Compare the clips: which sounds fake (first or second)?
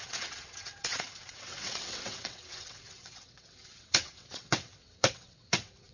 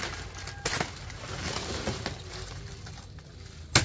first